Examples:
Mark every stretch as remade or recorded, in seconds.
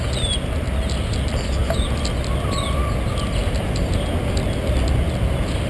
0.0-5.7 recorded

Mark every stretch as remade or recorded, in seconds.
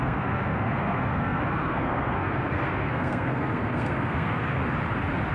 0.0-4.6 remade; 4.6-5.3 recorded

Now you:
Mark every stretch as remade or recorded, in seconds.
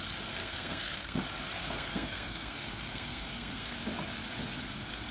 0.0-0.4 recorded; 0.4-1.2 remade; 1.2-1.6 recorded; 1.6-3.8 remade; 3.8-5.1 recorded